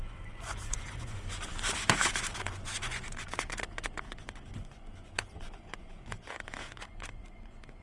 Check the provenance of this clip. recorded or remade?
remade